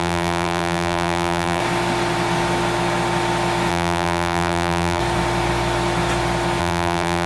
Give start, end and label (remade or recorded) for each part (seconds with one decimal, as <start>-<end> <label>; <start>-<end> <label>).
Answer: 0.0-1.6 remade; 1.6-3.7 recorded; 3.7-5.0 remade; 5.0-6.6 recorded; 6.6-7.3 remade